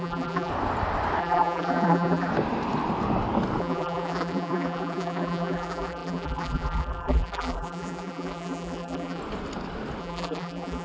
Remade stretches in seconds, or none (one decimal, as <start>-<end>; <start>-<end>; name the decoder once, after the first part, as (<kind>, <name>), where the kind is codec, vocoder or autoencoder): 0.0-0.5 (vocoder, BigVGAN v2); 1.2-2.3; 3.6-9.2; 10.0-10.8